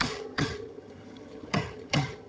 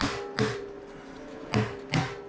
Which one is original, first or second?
second